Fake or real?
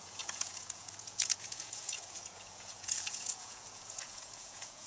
fake